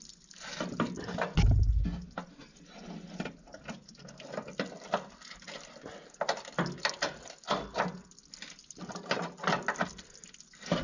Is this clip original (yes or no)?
yes